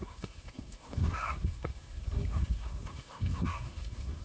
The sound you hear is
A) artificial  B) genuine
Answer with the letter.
A